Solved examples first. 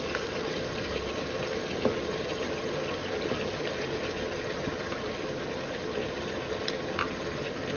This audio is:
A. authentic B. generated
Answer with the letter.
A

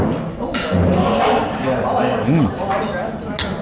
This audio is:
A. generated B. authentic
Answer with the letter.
B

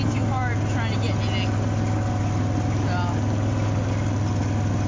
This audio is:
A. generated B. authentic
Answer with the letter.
B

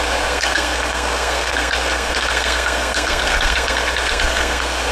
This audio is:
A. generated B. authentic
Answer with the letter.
A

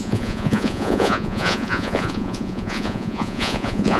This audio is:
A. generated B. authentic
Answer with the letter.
A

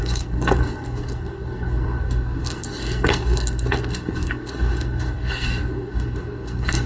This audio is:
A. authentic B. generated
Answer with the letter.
B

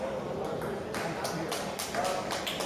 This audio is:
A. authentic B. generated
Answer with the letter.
B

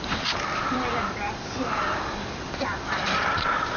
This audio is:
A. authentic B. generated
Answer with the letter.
B